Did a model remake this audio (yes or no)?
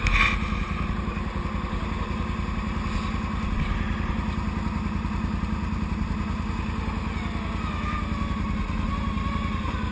no